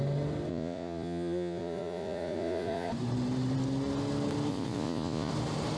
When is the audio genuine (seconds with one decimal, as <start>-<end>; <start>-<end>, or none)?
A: 0.0-0.5; 2.9-4.5; 5.3-5.8